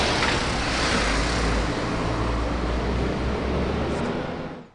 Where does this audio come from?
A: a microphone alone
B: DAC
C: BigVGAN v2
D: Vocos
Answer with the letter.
A